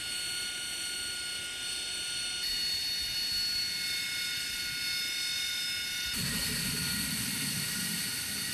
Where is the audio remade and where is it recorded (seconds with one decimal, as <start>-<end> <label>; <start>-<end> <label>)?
0.0-8.5 recorded